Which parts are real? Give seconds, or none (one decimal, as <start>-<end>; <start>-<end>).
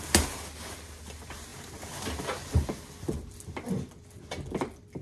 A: 0.0-5.0